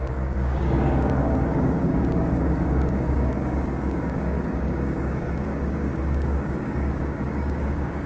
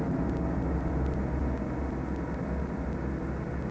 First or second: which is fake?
first